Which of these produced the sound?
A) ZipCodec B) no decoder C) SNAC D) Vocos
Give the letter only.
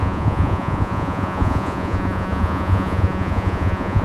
D